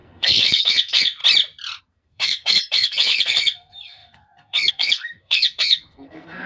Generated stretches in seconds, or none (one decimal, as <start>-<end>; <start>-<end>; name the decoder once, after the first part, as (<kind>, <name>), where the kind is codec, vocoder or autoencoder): 0.0-1.2 (codec, SNAC); 1.8-6.5